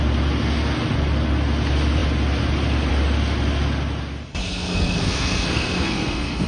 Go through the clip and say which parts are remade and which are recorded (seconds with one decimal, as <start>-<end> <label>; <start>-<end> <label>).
0.0-4.4 recorded; 4.4-6.5 remade